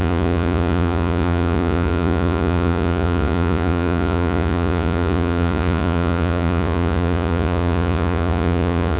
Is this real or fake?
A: fake